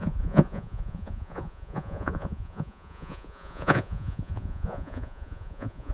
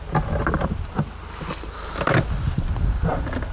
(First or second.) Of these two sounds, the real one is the second